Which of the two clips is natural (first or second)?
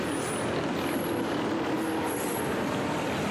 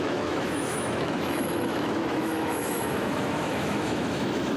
first